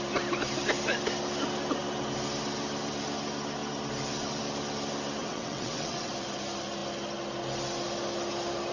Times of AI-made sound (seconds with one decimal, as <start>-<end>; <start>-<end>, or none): 5.2-6.1